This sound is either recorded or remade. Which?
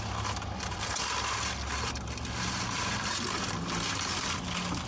recorded